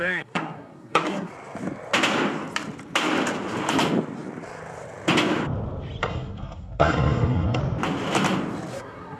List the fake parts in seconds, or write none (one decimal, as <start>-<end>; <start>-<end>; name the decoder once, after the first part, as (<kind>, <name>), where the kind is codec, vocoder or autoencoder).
0.0-1.3 (codec, SNAC); 6.0-7.6; 8.7-9.2